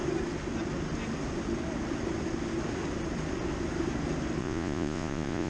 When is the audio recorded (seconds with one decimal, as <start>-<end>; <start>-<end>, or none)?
0.0-4.4